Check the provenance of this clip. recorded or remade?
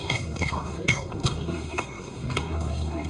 remade